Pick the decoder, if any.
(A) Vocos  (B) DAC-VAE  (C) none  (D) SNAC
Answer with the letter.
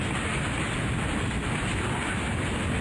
C